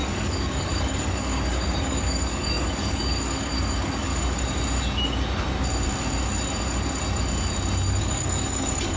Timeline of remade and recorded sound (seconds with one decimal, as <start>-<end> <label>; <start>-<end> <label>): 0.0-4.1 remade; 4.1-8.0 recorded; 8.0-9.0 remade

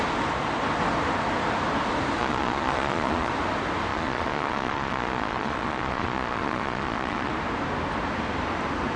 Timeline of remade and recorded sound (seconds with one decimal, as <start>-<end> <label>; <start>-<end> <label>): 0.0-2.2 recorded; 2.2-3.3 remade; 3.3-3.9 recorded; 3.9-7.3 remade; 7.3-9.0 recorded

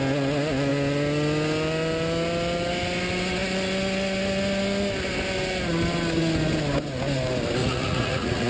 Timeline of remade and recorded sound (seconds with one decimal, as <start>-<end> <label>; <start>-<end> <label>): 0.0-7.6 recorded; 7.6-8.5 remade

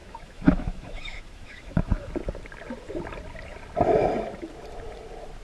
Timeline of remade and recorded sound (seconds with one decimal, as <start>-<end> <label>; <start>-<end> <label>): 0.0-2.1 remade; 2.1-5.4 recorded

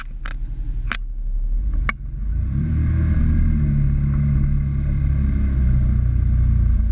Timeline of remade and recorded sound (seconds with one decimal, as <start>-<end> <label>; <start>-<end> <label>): 0.0-2.3 recorded; 2.3-3.2 remade; 3.2-6.9 recorded